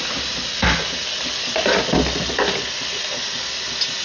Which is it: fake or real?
real